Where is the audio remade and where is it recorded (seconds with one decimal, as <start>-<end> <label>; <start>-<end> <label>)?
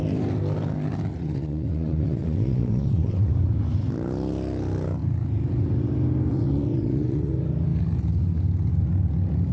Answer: 0.0-1.1 recorded; 1.1-3.3 remade; 3.3-6.3 recorded; 6.3-7.3 remade; 7.3-9.5 recorded